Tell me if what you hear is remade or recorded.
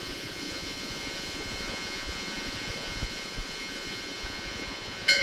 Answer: remade